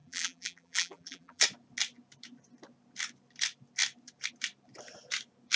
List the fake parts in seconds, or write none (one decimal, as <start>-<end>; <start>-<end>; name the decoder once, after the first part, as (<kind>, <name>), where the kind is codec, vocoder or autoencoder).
0.0-1.4 (vocoder, BigVGAN v2)